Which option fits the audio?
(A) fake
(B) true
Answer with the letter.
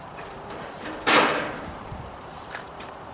A